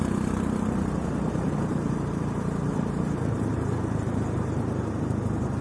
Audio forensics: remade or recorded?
remade